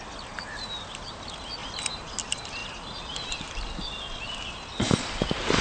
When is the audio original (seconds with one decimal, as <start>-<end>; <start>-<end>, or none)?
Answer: 0.0-5.6